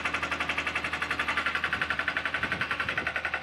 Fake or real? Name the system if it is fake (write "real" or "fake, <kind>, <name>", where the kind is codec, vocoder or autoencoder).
real